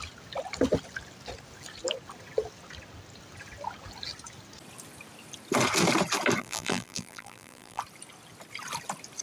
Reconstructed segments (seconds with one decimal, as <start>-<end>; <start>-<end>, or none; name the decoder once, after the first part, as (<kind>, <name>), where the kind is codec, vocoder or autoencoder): 6.4-7.8 (vocoder, BigVGAN v2)